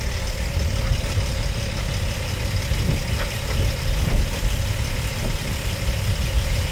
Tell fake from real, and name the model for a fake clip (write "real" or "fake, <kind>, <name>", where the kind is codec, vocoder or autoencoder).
real